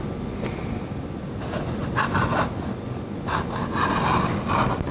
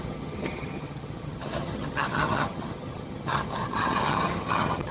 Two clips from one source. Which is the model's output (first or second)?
second